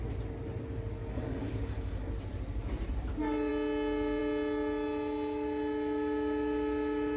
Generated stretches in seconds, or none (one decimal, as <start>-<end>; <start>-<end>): 1.0-2.1